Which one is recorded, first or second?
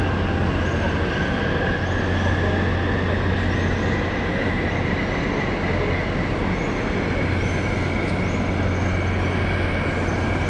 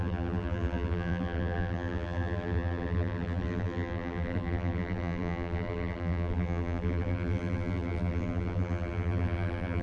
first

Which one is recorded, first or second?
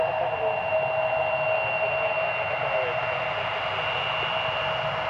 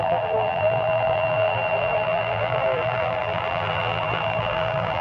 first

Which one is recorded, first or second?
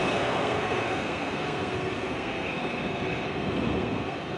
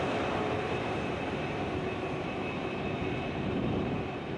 second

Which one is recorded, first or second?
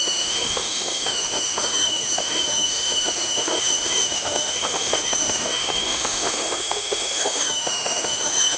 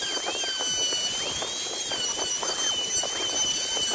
second